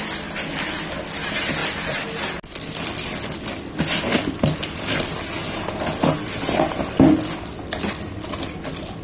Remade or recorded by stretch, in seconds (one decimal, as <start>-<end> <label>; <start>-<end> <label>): 0.0-9.0 recorded